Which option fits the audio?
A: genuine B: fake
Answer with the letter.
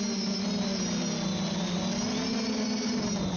A